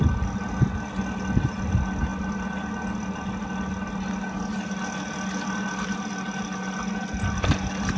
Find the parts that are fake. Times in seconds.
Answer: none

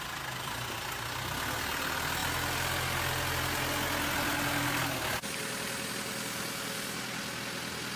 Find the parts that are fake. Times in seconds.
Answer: none

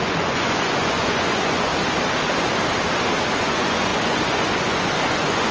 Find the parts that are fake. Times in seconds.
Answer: 0.0-1.7 (vocoder, Vocos); 3.3-5.5